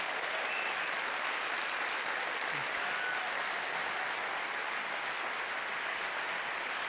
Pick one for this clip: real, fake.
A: real